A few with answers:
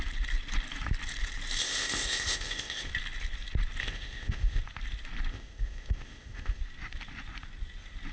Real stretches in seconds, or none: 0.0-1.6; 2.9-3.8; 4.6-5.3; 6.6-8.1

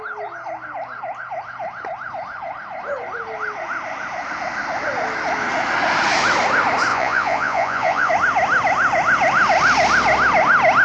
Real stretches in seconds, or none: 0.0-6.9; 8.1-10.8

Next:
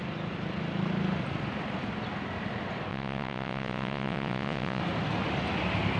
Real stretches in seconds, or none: 0.0-2.9; 4.8-6.0